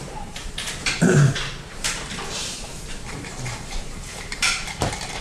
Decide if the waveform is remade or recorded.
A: remade